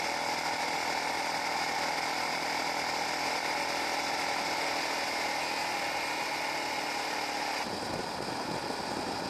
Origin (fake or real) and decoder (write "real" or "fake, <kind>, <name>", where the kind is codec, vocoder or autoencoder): real